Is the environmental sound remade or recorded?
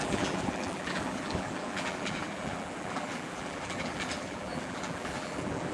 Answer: remade